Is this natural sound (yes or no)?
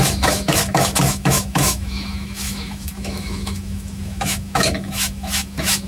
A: no